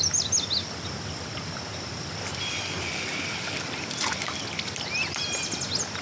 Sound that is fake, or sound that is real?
real